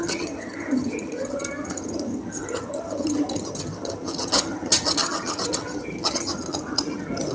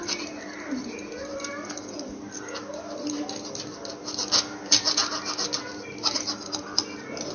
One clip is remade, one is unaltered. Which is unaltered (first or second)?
second